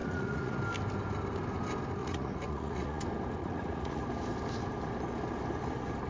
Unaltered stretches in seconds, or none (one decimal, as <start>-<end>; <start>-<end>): 0.6-2.0; 3.0-3.4; 4.0-6.1